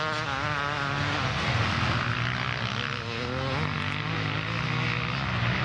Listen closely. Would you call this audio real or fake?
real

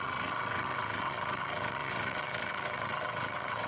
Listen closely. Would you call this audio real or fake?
fake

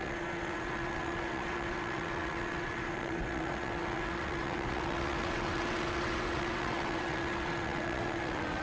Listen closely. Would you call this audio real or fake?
fake